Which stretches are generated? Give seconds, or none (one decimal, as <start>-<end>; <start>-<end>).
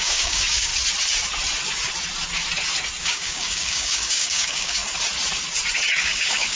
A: 0.0-0.7; 3.0-4.8; 6.0-6.6